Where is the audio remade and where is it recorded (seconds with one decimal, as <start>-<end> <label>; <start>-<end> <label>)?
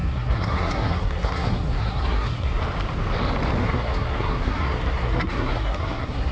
0.0-2.6 remade; 2.6-3.6 recorded; 3.6-6.3 remade